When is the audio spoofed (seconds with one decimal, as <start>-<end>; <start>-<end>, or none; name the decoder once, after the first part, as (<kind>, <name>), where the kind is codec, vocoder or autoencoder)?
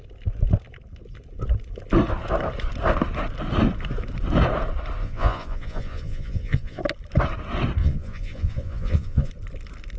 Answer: 5.0-6.8 (vocoder, Vocos); 7.8-9.3